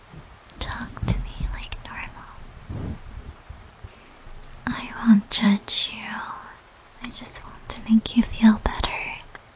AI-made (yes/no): yes